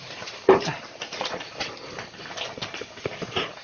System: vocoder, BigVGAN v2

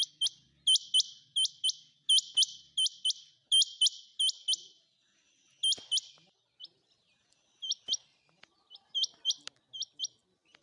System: none